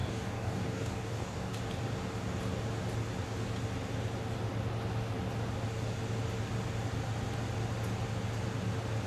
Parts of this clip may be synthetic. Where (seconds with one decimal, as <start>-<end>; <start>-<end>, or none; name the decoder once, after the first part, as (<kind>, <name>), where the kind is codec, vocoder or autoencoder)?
0.0-1.6 (codec, DAC)